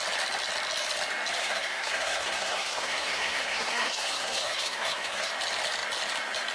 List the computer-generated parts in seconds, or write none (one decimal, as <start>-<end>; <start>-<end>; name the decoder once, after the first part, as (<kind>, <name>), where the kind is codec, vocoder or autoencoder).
1.4-5.3 (codec, SNAC)